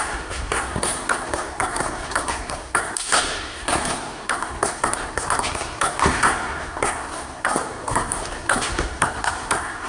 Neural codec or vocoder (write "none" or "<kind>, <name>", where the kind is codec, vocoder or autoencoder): codec, SNAC